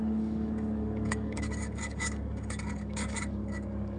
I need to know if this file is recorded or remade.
remade